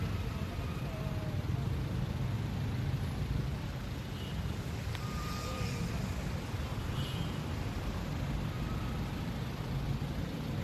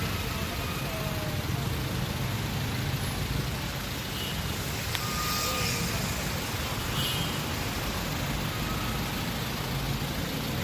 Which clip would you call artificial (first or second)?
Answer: first